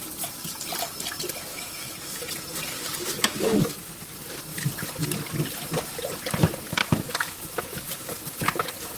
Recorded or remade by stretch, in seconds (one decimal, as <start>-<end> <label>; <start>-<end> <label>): 0.0-1.5 recorded; 1.5-2.2 remade; 2.2-3.2 recorded; 3.2-3.7 remade; 3.7-6.8 recorded; 6.8-8.2 remade; 8.2-9.0 recorded